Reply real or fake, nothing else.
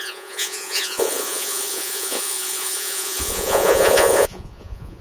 fake